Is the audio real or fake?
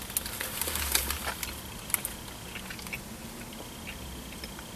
real